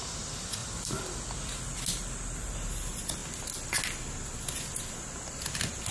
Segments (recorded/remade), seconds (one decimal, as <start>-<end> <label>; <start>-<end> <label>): 0.0-0.6 recorded; 0.6-1.3 remade; 1.3-5.9 recorded